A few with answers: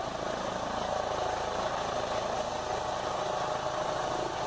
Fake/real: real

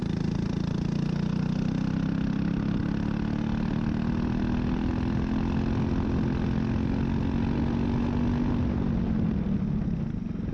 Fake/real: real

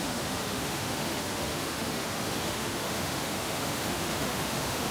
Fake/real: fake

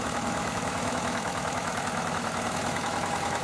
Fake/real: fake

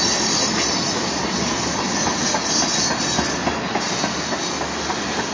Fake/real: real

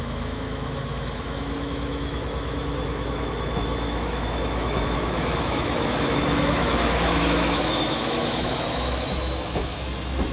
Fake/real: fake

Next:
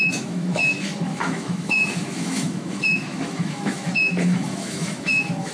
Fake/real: fake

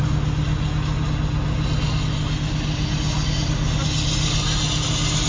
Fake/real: real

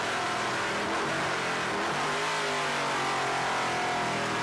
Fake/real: real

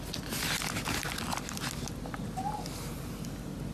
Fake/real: real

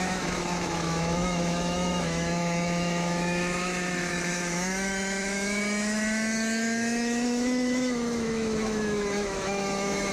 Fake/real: fake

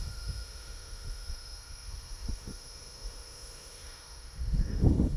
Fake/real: fake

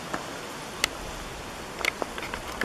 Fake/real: real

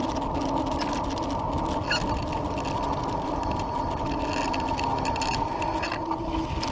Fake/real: real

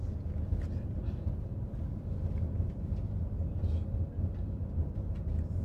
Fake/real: real